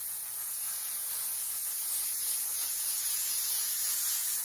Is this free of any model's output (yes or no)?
no